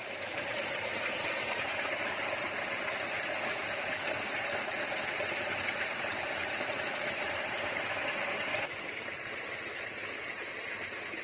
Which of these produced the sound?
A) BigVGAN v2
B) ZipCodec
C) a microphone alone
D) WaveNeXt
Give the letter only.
A